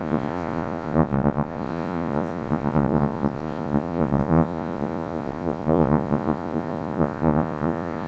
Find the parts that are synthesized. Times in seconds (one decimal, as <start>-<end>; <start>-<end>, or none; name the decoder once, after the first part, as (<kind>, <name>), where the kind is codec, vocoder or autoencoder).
0.0-8.1 (vocoder, Vocos)